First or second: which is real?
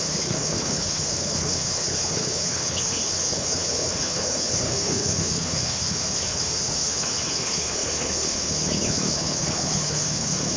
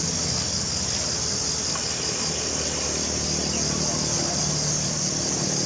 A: second